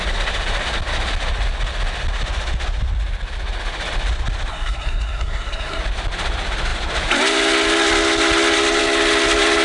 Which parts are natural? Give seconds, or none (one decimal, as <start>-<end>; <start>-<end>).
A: 0.0-4.5; 5.8-9.6